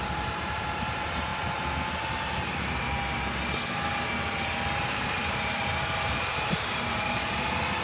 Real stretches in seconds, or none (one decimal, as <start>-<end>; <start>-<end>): 1.3-4.9